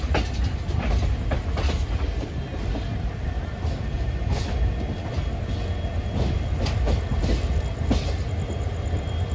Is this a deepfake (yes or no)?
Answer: no